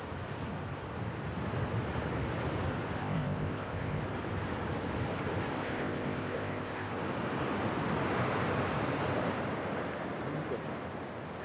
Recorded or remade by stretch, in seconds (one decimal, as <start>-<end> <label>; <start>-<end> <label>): 0.0-3.0 recorded; 3.0-4.0 remade; 4.0-5.6 recorded; 5.6-6.9 remade; 6.9-11.4 recorded